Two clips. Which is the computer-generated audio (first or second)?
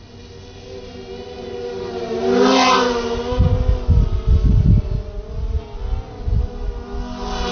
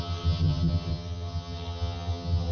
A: second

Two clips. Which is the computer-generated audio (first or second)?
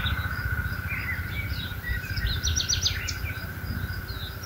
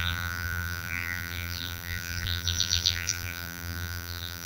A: second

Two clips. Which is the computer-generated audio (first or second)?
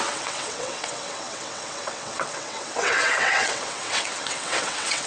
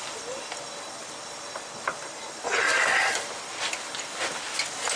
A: first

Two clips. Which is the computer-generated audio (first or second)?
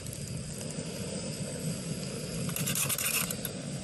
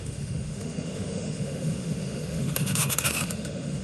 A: second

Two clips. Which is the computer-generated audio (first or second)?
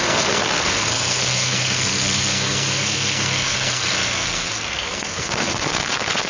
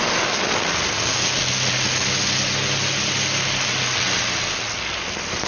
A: first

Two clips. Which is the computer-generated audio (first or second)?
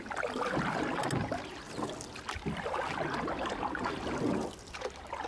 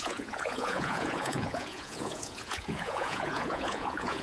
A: second